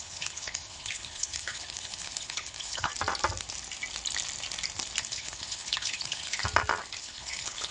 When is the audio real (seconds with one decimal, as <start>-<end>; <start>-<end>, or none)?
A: 2.9-5.0; 6.4-7.0